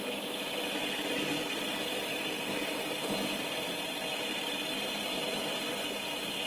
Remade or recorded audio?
recorded